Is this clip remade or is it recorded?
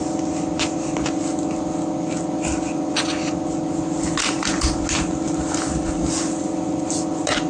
recorded